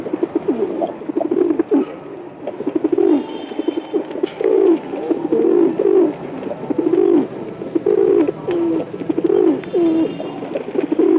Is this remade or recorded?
recorded